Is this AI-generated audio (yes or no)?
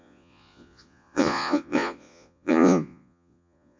yes